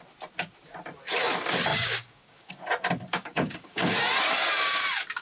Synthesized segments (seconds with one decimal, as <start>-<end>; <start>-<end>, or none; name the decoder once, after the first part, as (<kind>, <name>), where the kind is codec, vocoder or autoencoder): 1.7-2.5 (codec, DAC); 3.1-4.0